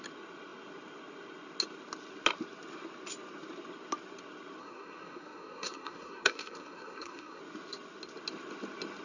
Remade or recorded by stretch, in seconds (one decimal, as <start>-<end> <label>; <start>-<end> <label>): 0.0-4.6 recorded; 4.6-7.4 remade; 7.4-9.0 recorded